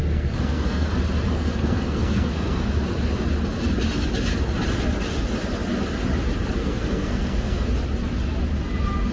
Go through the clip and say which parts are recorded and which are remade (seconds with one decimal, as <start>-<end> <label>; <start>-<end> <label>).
0.0-0.9 remade; 0.9-1.3 recorded; 1.3-2.7 remade; 2.7-6.6 recorded; 6.6-7.7 remade; 7.7-9.1 recorded